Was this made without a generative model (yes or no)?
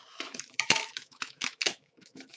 no